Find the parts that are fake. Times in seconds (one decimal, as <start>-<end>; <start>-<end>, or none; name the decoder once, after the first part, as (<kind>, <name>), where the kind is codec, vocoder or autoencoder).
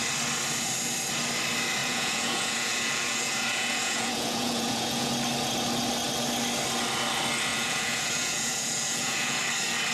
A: 1.8-5.1 (vocoder, Vocos); 7.5-9.4